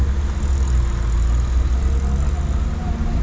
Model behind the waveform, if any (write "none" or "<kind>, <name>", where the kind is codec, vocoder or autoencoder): none